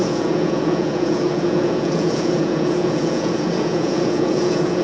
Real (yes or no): no